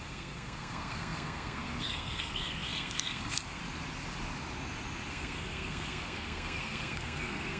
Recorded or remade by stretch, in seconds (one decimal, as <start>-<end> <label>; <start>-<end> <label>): 0.0-3.6 remade; 3.6-5.1 recorded; 5.1-7.6 remade